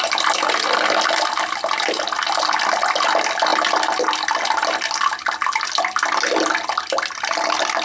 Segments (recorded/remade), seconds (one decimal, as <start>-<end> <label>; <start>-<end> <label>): 0.0-7.8 recorded